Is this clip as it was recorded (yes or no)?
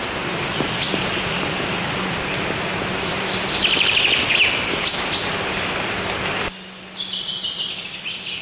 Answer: yes